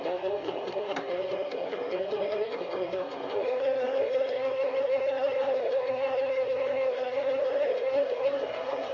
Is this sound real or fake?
fake